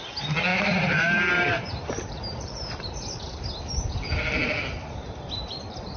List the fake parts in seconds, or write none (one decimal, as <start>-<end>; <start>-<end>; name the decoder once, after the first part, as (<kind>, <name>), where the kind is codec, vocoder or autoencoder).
0.5-3.2 (vocoder, BigVGAN v2)